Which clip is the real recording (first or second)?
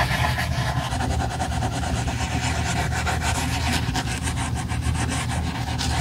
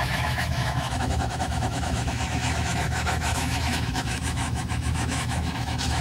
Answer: first